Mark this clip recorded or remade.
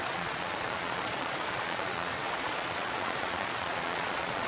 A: remade